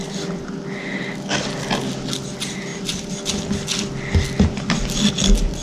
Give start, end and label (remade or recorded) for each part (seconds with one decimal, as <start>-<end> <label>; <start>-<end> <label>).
0.0-5.6 recorded